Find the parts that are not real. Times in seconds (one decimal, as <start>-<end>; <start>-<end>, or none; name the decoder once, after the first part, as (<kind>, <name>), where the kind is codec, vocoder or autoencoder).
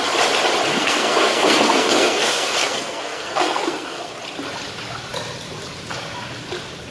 0.7-4.2 (codec, SNAC)